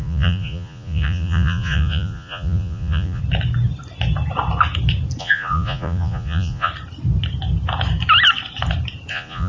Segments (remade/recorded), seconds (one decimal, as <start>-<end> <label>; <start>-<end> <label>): 0.0-3.2 remade; 3.2-5.2 recorded; 5.2-6.7 remade; 6.7-9.1 recorded; 9.1-9.5 remade